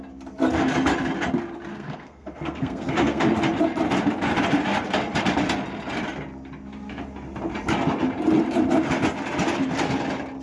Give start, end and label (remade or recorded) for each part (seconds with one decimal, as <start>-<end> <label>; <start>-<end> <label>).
0.0-1.7 recorded; 1.7-3.2 remade; 3.2-10.4 recorded